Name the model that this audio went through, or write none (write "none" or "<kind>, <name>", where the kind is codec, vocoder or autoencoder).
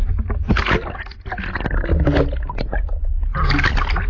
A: none